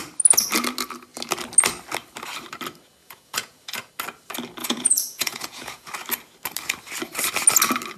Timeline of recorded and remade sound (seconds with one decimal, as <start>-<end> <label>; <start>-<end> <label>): 0.0-3.0 recorded; 3.0-3.9 remade; 3.9-4.6 recorded; 4.6-5.9 remade; 5.9-8.0 recorded